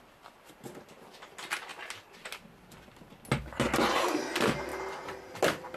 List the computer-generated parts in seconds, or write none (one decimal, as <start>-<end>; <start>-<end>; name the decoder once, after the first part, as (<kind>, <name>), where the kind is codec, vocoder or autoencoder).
none